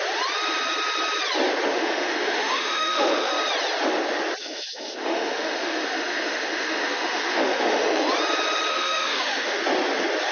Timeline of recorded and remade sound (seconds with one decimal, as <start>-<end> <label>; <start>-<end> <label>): 0.0-1.7 recorded; 1.7-3.3 remade; 3.3-4.4 recorded; 4.4-8.1 remade; 8.1-8.7 recorded; 8.7-9.6 remade; 9.6-10.3 recorded